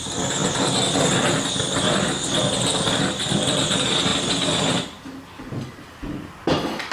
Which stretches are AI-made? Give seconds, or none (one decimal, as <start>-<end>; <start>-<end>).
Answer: 0.0-0.4; 1.5-4.1; 4.8-6.9